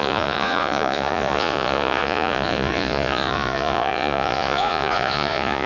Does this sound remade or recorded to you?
remade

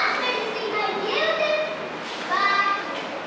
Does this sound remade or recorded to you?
recorded